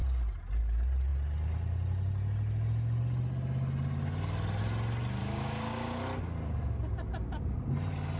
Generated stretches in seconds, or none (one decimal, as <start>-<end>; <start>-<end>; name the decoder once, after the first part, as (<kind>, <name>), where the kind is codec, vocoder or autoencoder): 5.2-6.0 (codec, DAC)

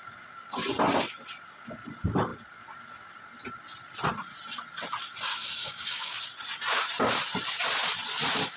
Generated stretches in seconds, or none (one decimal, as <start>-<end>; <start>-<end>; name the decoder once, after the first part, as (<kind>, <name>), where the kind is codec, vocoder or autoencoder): 5.3-6.2 (codec, DAC)

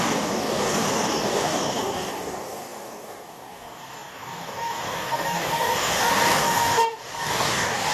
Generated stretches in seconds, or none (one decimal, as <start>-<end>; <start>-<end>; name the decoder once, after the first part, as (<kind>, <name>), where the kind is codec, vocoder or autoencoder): 0.0-7.9 (codec, DAC)

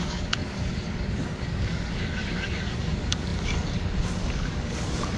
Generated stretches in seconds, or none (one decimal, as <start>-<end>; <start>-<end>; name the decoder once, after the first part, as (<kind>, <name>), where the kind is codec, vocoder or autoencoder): 0.0-5.2 (codec, DAC)